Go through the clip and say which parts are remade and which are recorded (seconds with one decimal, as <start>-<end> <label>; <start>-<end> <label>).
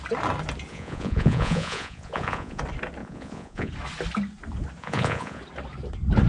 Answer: 0.0-0.7 recorded; 0.7-2.6 remade; 2.6-3.0 recorded; 3.0-3.7 remade; 3.7-4.8 recorded; 4.8-5.4 remade; 5.4-6.3 recorded